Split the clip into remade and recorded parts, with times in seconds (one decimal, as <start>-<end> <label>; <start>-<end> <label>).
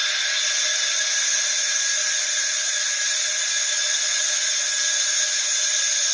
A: 0.0-6.1 recorded